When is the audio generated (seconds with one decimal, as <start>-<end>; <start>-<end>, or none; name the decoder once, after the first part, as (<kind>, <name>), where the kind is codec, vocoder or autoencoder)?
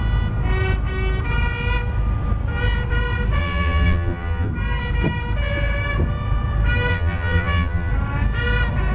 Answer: 3.4-4.5 (vocoder, BigVGAN v2); 6.9-7.9